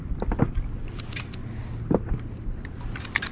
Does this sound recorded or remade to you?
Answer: recorded